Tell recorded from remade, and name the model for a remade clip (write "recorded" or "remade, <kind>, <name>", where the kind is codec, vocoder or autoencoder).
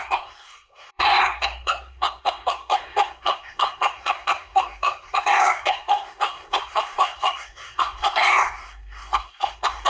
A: remade, codec, SNAC